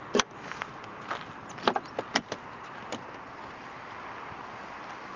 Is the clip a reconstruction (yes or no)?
no